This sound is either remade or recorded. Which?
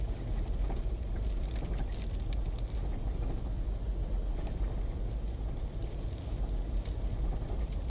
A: recorded